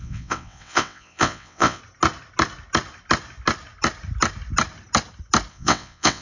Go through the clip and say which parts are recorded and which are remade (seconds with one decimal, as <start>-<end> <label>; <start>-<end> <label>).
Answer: 0.0-1.8 remade; 1.8-5.5 recorded; 5.5-6.2 remade